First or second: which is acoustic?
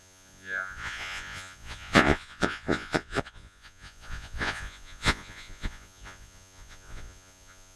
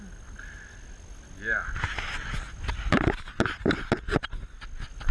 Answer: second